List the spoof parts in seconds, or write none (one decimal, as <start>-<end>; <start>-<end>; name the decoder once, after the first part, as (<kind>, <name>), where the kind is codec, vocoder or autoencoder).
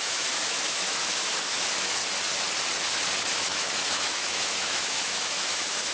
0.0-2.0 (autoencoder, DAC-VAE); 3.2-5.9